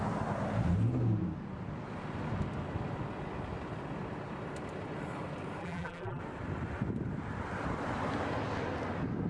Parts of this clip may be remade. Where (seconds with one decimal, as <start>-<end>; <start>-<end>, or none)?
5.6-6.2